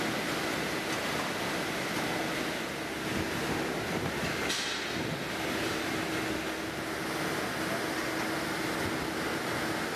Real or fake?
real